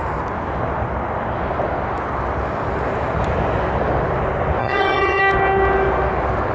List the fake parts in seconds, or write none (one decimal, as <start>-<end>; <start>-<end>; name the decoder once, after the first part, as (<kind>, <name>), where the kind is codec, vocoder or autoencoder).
4.6-5.2 (vocoder, HiFi-GAN)